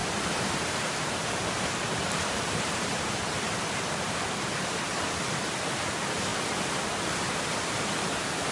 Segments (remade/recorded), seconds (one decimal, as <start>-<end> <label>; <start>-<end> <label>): 0.0-4.1 remade; 4.1-8.5 recorded